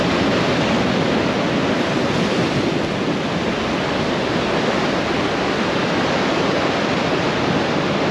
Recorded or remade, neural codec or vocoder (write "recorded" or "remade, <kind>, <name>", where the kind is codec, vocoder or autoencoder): recorded